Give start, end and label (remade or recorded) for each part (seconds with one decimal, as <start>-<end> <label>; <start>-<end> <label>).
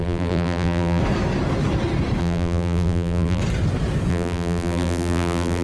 0.0-1.0 remade; 1.0-2.2 recorded; 2.2-3.4 remade; 3.4-4.1 recorded; 4.1-5.6 remade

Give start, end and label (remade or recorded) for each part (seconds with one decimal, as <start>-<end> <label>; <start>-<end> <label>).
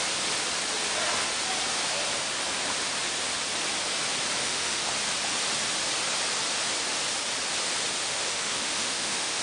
0.0-4.4 recorded; 4.4-4.9 remade; 4.9-8.0 recorded; 8.0-9.4 remade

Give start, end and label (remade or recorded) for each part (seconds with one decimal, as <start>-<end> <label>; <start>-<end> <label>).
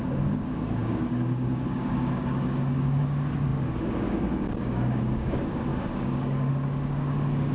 0.0-7.5 remade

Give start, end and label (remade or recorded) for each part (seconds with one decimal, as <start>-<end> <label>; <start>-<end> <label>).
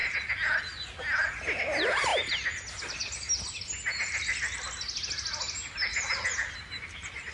0.0-7.3 recorded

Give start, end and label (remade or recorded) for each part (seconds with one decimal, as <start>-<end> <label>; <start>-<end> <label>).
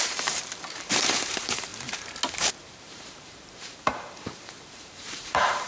0.0-1.7 remade; 1.7-2.3 recorded; 2.3-5.7 remade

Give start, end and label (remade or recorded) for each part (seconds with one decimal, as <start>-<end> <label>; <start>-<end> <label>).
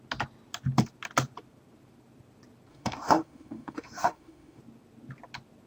0.0-2.7 recorded; 2.7-4.6 remade; 4.6-5.7 recorded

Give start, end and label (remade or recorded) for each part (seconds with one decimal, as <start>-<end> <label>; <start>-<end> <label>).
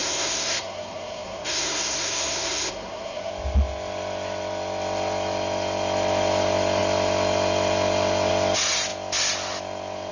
0.0-3.3 remade; 3.3-10.1 recorded